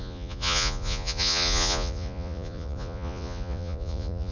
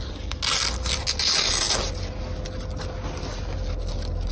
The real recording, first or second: second